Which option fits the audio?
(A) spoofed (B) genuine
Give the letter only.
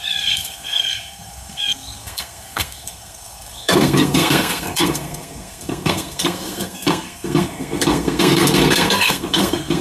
A